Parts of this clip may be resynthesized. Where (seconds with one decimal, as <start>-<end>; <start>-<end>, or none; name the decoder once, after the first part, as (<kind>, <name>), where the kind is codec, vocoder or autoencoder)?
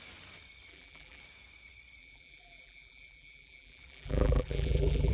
0.7-1.2 (vocoder, BigVGAN v2); 2.0-5.1